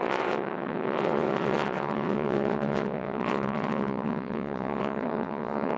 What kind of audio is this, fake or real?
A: fake